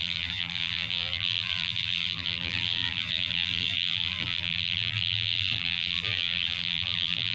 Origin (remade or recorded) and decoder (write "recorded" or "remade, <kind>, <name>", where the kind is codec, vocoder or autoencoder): remade, vocoder, BigVGAN v2